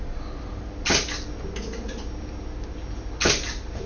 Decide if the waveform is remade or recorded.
recorded